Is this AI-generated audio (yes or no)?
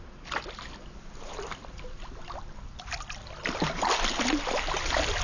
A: no